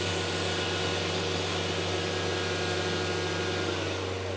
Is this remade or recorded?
recorded